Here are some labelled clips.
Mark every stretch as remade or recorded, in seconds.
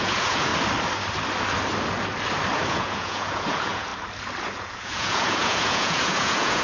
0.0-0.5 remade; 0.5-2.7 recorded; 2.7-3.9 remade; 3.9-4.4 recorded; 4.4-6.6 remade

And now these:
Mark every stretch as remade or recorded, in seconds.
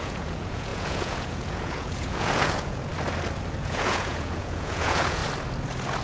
0.0-2.9 remade; 2.9-3.6 recorded; 3.6-5.2 remade; 5.2-6.0 recorded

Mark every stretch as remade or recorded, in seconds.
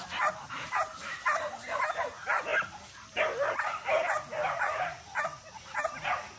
0.0-6.4 recorded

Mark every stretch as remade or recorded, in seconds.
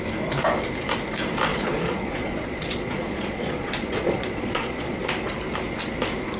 0.0-1.5 recorded; 1.5-5.0 remade; 5.0-6.4 recorded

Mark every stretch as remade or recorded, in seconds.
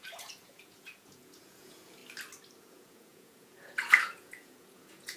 0.0-2.0 remade; 2.0-2.6 recorded; 2.6-5.2 remade